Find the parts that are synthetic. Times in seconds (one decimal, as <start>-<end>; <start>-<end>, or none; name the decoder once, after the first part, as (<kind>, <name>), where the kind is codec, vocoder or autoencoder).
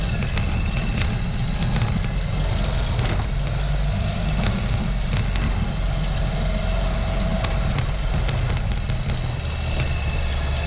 7.3-8.2 (vocoder, BigVGAN v2)